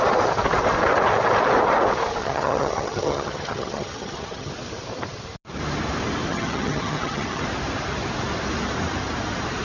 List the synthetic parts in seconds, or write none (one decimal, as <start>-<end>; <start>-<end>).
2.2-4.5; 6.3-7.4